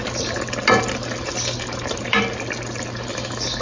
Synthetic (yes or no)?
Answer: no